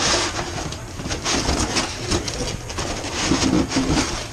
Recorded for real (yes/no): yes